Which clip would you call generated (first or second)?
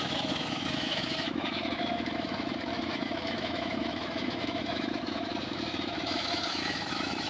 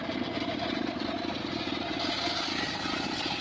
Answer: first